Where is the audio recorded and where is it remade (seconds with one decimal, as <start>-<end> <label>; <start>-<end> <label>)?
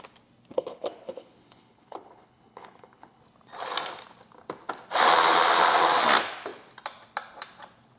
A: 0.0-0.5 recorded; 0.5-3.2 remade; 3.2-8.0 recorded